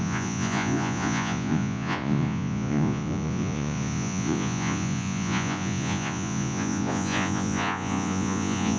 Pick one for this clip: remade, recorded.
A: remade